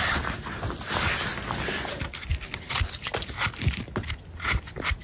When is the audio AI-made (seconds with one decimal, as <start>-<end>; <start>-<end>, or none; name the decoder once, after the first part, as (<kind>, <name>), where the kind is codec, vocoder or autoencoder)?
none